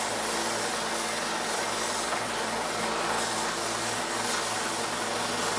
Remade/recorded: recorded